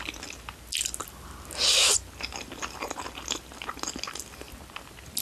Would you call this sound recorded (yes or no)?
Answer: yes